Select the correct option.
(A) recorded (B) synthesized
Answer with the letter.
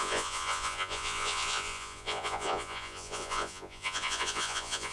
B